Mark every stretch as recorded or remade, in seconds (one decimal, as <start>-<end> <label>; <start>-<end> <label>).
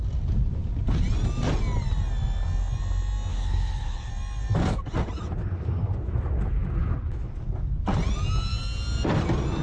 0.0-3.3 recorded; 3.3-4.1 remade; 4.1-9.6 recorded